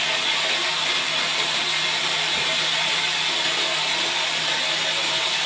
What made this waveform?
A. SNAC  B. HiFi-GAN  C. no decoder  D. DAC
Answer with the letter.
C